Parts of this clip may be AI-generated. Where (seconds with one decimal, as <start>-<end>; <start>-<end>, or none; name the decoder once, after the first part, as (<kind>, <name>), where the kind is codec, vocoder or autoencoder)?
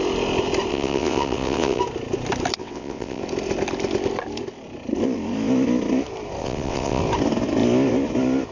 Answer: 0.7-1.8 (vocoder, WaveNeXt); 2.6-3.2; 6.4-7.0